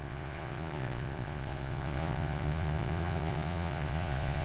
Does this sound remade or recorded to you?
remade